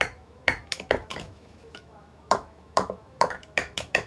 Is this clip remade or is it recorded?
remade